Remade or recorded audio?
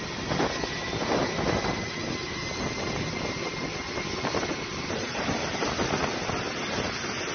recorded